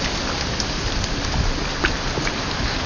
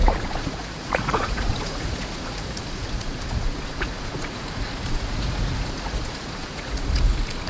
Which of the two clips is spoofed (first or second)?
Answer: second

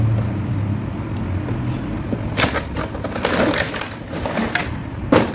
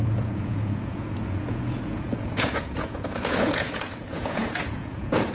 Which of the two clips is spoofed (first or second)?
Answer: second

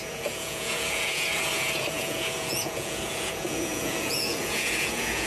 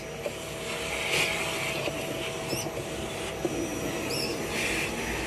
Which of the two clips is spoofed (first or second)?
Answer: first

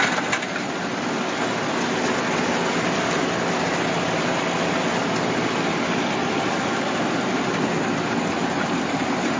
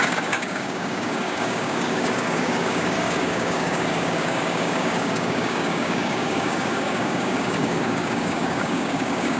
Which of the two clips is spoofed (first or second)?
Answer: second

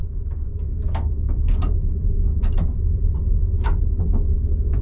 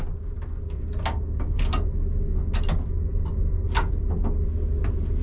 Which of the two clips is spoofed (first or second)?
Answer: first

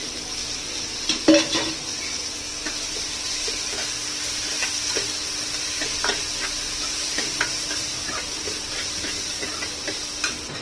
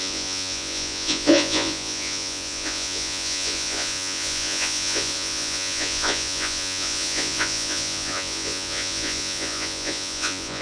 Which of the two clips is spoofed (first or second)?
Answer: second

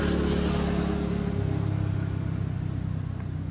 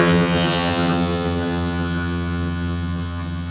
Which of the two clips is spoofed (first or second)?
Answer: second